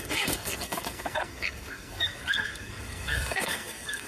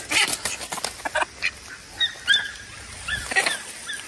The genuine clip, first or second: second